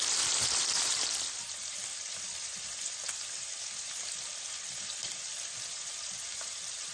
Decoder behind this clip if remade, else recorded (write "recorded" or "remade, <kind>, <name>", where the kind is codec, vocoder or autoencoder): remade, vocoder, BigVGAN v2